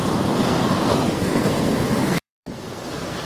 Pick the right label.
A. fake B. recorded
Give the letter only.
A